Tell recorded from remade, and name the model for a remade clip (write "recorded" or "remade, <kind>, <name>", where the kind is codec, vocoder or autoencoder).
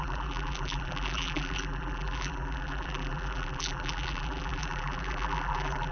remade, vocoder, BigVGAN v2